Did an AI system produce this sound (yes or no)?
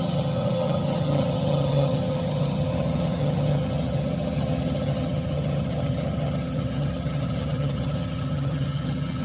yes